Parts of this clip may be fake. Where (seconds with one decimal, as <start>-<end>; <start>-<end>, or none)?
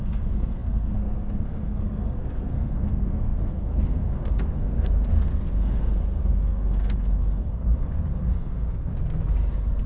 0.0-8.9